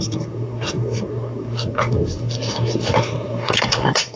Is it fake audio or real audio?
fake